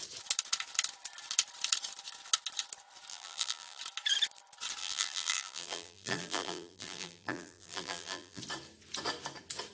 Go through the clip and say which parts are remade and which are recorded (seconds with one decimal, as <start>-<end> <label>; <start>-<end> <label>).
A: 0.0-3.1 recorded; 3.1-3.8 remade; 3.8-4.8 recorded; 4.8-8.4 remade; 8.4-9.7 recorded